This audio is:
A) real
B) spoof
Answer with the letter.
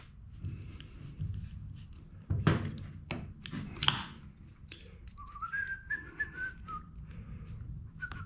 A